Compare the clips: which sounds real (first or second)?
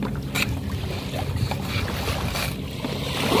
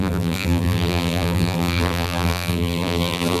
first